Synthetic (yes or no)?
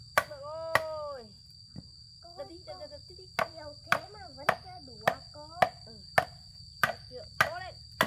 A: no